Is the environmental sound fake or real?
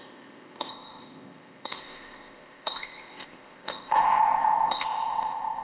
fake